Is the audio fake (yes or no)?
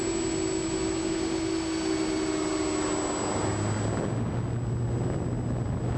no